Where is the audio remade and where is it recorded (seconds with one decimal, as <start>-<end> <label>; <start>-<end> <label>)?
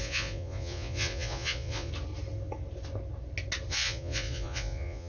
0.0-1.9 remade; 1.9-3.7 recorded; 3.7-5.1 remade